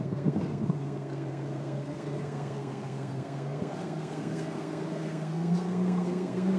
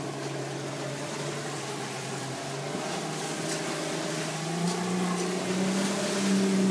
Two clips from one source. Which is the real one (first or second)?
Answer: second